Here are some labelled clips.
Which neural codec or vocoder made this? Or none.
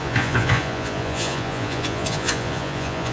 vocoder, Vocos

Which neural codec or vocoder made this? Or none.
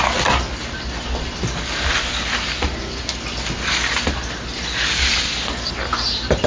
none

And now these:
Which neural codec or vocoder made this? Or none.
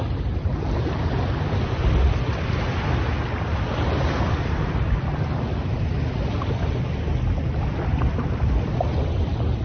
none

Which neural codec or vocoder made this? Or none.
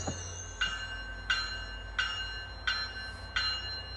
none